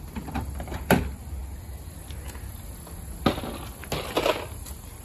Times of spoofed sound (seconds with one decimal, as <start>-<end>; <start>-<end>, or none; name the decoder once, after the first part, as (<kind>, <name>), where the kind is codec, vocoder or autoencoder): 1.4-2.0 (vocoder, BigVGAN v2)